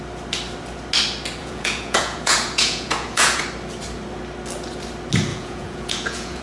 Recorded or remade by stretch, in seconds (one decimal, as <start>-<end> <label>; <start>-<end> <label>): 0.0-1.4 recorded; 1.4-3.4 remade; 3.4-5.3 recorded; 5.3-6.4 remade